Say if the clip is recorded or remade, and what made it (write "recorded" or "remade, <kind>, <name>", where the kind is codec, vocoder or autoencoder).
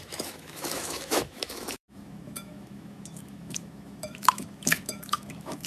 remade, autoencoder, DAC-VAE